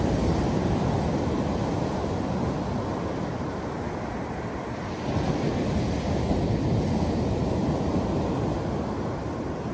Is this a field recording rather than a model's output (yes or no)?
yes